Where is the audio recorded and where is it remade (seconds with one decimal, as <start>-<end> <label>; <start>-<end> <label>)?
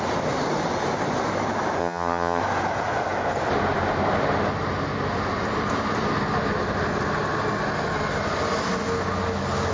0.0-1.8 recorded; 1.8-2.4 remade; 2.4-9.7 recorded